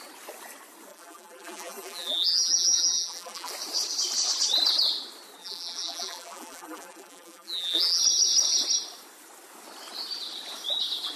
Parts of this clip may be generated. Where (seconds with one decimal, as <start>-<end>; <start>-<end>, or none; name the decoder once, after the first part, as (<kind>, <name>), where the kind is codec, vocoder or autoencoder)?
0.9-3.5 (vocoder, BigVGAN v2); 5.4-8.0